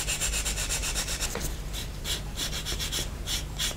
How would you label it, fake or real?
fake